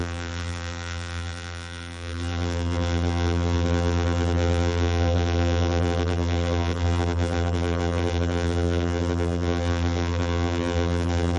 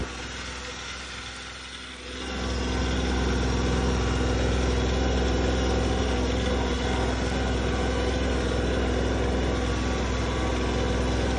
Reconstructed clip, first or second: first